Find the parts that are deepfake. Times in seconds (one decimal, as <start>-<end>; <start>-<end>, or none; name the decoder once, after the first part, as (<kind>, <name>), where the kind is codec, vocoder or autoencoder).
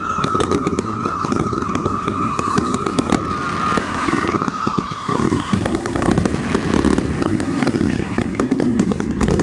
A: 0.0-3.1 (codec, SNAC); 3.8-6.1; 7.2-9.4